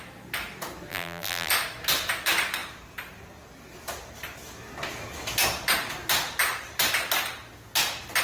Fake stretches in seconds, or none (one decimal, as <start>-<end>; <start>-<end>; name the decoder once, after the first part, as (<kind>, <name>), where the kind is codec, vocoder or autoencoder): 0.9-1.5 (vocoder, BigVGAN v2)